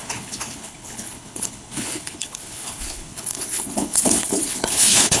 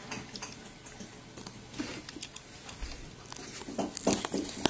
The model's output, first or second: first